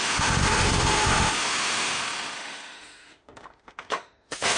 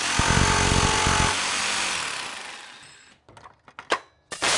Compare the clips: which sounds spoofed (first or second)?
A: first